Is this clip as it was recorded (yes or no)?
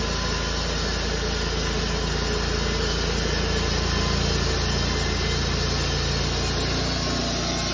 yes